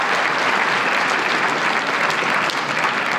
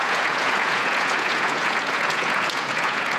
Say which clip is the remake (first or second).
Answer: second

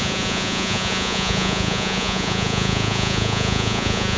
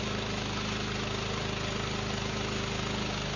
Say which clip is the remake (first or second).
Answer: first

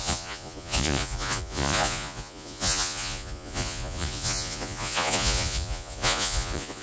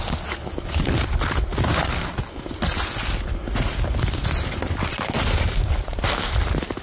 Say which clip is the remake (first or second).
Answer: first